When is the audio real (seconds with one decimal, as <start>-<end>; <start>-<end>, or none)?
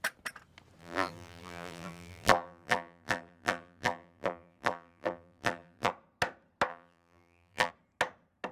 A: 0.0-0.8; 5.9-6.7; 7.7-8.5